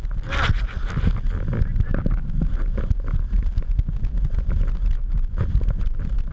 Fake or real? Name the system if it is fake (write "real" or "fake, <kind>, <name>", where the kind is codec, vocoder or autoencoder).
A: real